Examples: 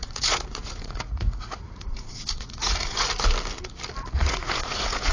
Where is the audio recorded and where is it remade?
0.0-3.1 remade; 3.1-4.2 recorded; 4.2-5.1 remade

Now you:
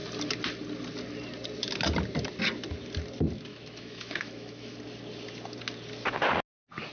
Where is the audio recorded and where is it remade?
0.0-3.5 recorded; 3.5-4.8 remade; 4.8-6.9 recorded

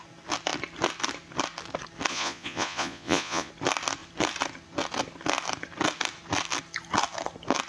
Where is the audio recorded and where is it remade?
0.0-2.1 recorded; 2.1-3.5 remade; 3.5-7.7 recorded

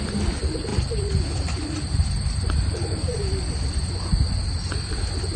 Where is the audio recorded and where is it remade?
0.0-0.7 recorded; 0.7-3.9 remade; 3.9-5.4 recorded

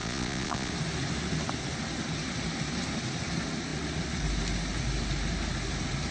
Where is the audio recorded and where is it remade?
0.0-0.7 remade; 0.7-6.1 recorded

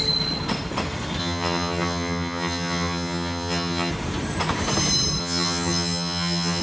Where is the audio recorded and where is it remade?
0.0-1.2 recorded; 1.2-3.9 remade; 3.9-5.2 recorded; 5.2-6.6 remade